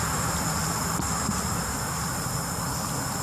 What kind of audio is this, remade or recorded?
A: recorded